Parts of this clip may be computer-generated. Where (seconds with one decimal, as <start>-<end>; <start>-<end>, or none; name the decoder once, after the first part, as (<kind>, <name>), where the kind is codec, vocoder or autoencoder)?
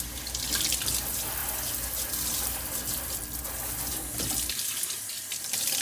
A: none